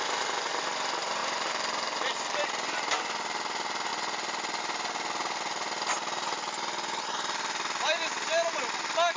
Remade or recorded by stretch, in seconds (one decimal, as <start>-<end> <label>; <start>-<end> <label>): 0.0-1.2 recorded; 1.2-3.0 remade; 3.0-9.2 recorded